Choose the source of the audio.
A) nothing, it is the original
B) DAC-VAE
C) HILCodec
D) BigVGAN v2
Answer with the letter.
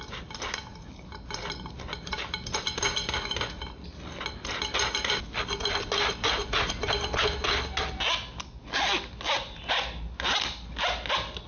A